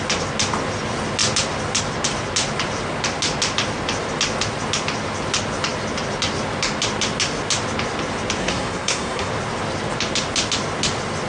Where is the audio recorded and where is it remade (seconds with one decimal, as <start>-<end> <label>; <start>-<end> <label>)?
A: 0.0-8.4 recorded; 8.4-9.3 remade; 9.3-11.3 recorded